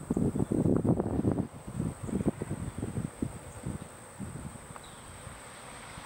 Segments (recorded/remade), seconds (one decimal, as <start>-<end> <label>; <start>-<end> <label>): 0.0-0.7 remade; 0.7-4.4 recorded; 4.4-6.1 remade